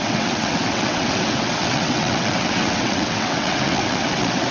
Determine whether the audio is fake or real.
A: fake